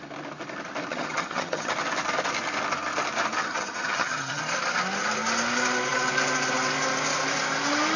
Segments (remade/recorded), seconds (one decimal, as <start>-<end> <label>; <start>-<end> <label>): 0.0-0.9 recorded; 0.9-1.7 remade; 1.7-3.4 recorded; 3.4-4.4 remade; 4.4-8.0 recorded